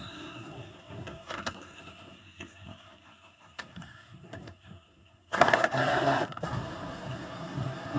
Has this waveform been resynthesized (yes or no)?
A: yes